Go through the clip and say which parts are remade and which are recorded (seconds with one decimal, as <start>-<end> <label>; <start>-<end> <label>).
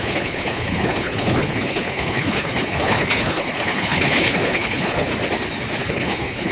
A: 0.0-5.1 remade; 5.1-5.8 recorded; 5.8-6.5 remade